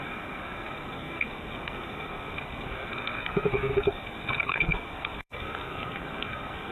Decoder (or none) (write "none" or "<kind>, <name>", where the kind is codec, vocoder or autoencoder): codec, SNAC